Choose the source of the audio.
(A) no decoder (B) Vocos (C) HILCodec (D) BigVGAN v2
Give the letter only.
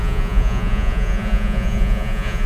B